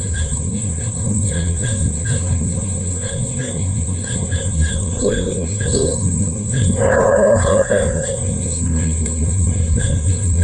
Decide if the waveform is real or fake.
fake